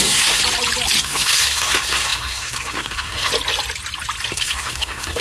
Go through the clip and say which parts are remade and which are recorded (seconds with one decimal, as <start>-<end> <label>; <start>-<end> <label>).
0.0-0.4 remade; 0.4-1.0 recorded; 1.0-3.3 remade; 3.3-4.3 recorded; 4.3-5.2 remade